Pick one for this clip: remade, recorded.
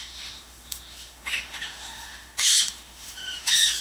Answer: remade